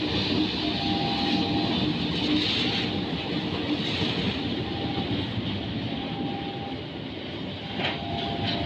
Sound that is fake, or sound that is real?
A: real